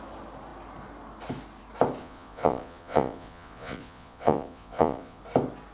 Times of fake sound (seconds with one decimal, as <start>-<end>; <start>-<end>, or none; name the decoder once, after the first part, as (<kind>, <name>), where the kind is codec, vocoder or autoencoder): 2.0-5.2 (vocoder, Vocos)